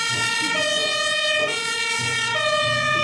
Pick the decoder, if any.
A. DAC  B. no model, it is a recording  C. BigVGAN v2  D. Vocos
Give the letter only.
D